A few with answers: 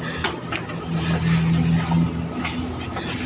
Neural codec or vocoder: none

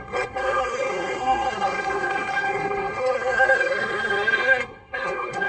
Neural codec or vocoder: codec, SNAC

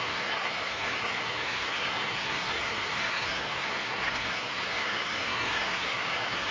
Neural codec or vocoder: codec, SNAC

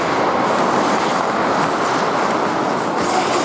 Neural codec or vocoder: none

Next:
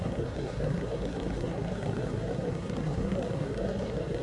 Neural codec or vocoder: codec, SNAC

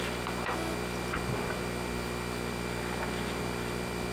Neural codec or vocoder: none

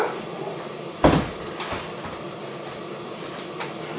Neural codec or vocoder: vocoder, BigVGAN v2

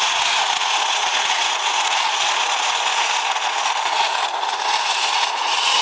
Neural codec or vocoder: vocoder, Vocos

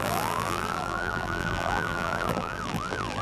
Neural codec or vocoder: vocoder, BigVGAN v2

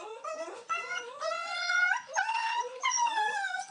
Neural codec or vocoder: vocoder, Vocos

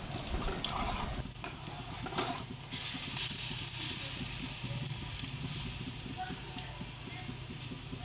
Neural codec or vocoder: none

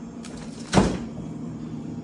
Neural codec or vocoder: vocoder, BigVGAN v2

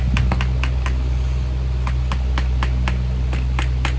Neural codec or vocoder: none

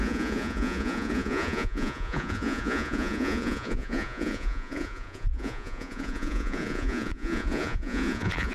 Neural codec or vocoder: vocoder, Vocos